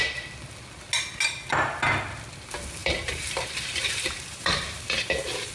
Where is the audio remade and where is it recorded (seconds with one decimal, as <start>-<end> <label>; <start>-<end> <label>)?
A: 0.0-2.8 recorded; 2.8-5.5 remade